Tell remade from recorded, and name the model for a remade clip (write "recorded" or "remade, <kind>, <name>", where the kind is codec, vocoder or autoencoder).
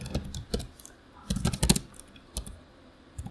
recorded